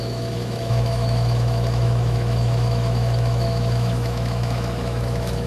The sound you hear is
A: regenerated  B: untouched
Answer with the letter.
A